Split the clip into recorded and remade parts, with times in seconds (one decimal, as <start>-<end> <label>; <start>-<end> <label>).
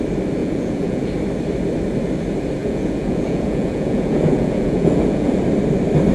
0.0-0.4 recorded; 0.4-1.1 remade; 1.1-2.6 recorded; 2.6-5.4 remade; 5.4-6.1 recorded